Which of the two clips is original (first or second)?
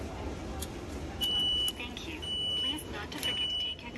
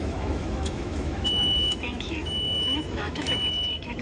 first